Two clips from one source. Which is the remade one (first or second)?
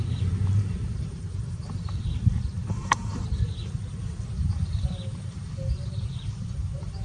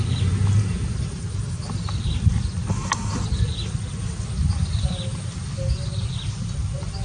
first